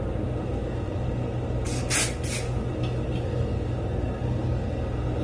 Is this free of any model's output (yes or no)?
yes